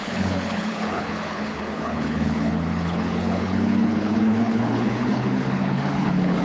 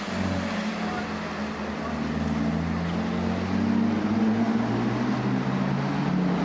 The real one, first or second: second